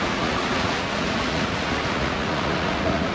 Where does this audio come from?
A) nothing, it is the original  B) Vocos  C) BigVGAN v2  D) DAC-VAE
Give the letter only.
B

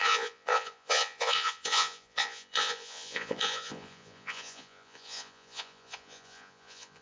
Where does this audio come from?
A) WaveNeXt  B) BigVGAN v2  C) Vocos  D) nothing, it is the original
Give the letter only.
C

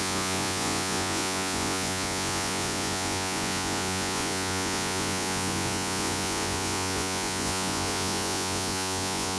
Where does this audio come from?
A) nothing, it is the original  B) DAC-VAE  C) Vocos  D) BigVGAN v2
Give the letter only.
C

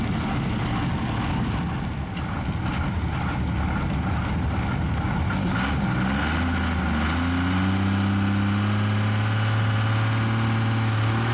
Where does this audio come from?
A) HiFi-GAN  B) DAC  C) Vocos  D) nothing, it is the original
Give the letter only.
D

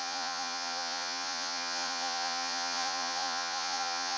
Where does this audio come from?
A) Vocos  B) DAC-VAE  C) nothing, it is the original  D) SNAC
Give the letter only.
A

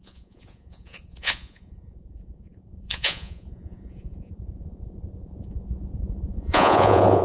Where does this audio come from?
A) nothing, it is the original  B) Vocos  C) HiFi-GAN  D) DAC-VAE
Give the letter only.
B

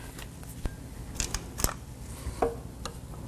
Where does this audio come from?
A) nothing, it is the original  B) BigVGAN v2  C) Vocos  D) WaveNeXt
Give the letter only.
A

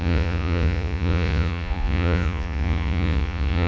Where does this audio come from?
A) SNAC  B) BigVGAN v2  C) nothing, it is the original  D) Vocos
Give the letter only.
D